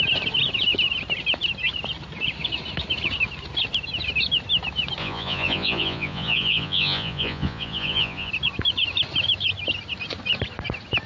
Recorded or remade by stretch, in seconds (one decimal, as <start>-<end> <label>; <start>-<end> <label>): 0.0-5.0 recorded; 5.0-8.3 remade; 8.3-11.1 recorded